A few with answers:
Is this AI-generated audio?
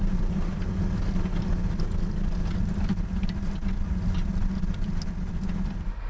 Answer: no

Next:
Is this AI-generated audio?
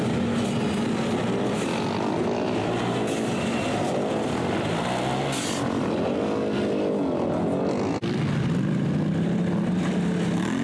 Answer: no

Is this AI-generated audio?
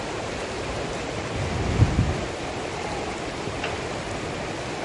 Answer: no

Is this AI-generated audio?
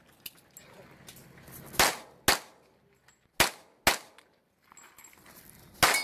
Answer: no